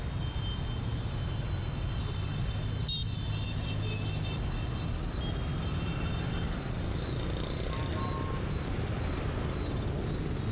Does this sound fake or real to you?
real